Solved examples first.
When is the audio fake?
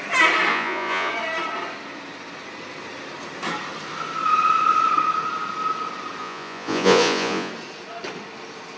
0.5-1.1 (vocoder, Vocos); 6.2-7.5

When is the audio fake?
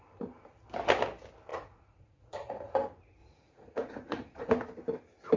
1.5-2.7 (vocoder, Vocos); 3.2-4.5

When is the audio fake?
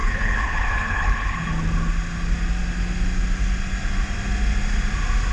0.0-1.5 (codec, HILCodec)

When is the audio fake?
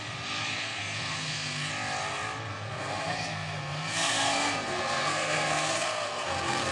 0.4-1.7 (codec, SNAC); 2.5-6.7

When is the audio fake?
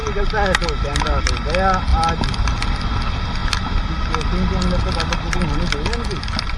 none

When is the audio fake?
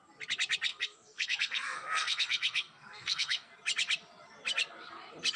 0.7-3.5 (codec, SNAC)